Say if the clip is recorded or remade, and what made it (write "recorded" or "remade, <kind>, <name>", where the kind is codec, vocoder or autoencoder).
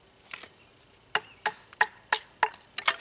recorded